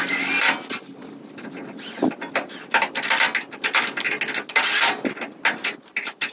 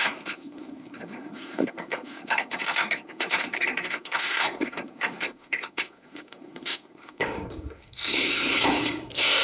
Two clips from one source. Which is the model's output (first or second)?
second